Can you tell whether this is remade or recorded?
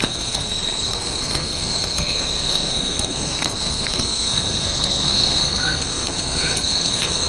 remade